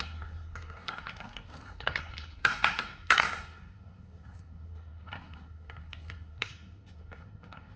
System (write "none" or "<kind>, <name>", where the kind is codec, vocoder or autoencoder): codec, SNAC